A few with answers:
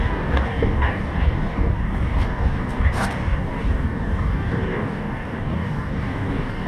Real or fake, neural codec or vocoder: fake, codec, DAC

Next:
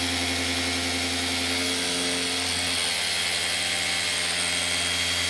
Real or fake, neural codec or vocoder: real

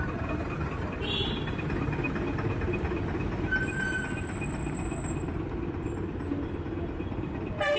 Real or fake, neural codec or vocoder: real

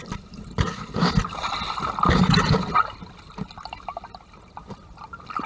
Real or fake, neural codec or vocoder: real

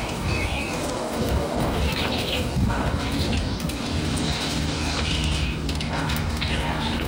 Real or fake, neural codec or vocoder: fake, codec, DAC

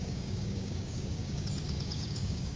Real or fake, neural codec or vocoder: fake, codec, DAC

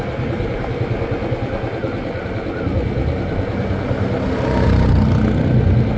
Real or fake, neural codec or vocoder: real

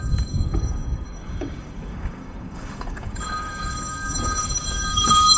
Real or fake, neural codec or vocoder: fake, codec, DAC